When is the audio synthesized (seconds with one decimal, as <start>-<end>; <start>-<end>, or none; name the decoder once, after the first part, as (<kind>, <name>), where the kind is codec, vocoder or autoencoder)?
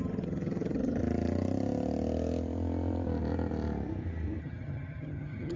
0.0-1.0 (vocoder, HiFi-GAN); 4.4-5.6